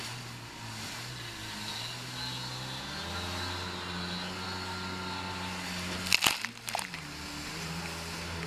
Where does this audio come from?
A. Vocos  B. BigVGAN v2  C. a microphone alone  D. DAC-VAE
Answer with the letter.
C